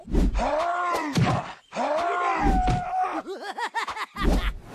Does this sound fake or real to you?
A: real